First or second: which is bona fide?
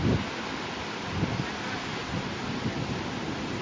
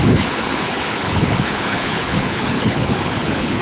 first